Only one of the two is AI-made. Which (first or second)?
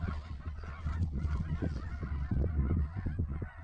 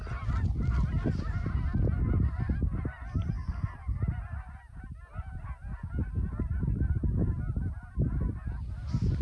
first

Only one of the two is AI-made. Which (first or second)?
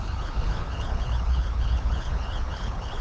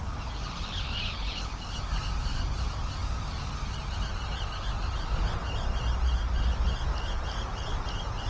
first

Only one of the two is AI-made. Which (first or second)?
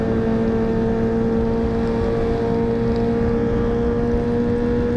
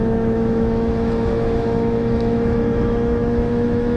second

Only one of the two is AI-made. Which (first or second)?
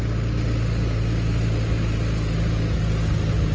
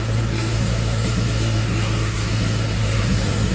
second